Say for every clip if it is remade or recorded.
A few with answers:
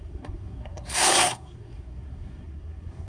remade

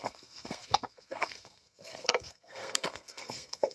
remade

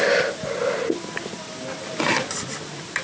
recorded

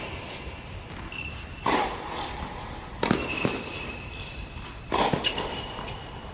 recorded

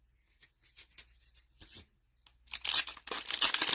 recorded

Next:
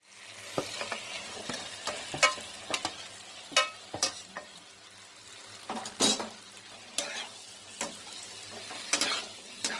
recorded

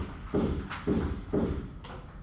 recorded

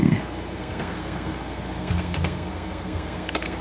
remade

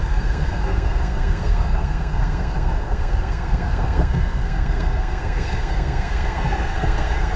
remade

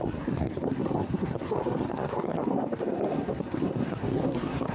remade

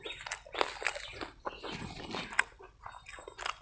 recorded